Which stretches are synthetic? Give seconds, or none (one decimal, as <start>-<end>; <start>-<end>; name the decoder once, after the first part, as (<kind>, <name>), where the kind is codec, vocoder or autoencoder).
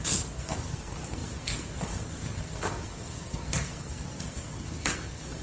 0.0-5.4 (codec, SNAC)